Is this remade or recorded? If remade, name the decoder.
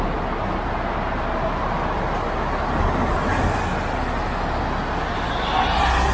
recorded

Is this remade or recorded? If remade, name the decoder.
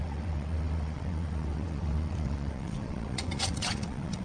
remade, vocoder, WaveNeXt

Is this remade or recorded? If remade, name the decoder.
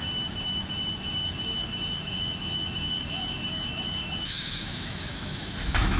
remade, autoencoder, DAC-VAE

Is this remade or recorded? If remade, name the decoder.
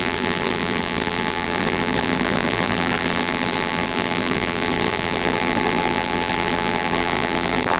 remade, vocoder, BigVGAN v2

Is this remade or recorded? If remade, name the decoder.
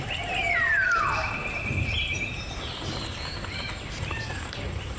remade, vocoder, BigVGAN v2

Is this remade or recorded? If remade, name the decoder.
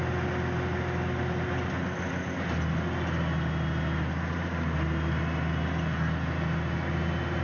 recorded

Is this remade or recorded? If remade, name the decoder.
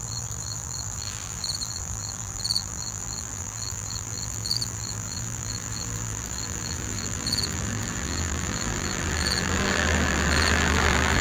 remade, vocoder, BigVGAN v2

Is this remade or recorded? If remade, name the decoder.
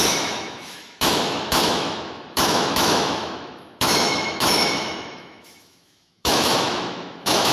remade, autoencoder, DAC-VAE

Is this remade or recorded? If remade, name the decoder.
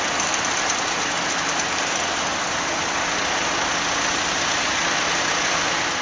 recorded